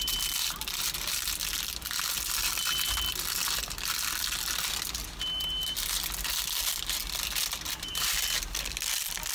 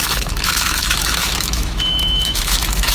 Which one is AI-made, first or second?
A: second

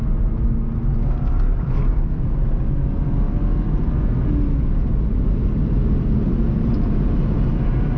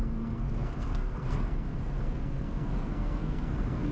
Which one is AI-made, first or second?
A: second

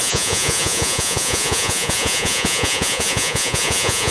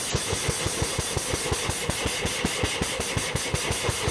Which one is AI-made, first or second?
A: first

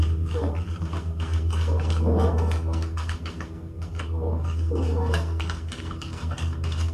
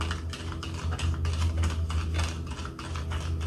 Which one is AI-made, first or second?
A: first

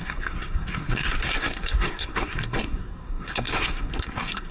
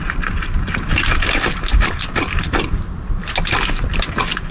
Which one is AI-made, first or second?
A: first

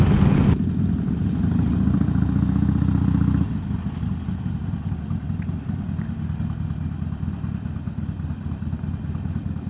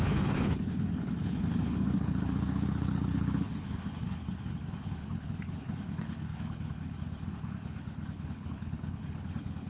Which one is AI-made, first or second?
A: second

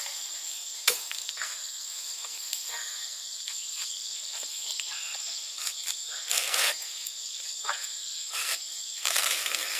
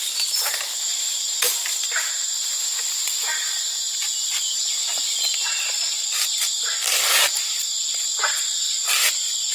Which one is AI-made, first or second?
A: first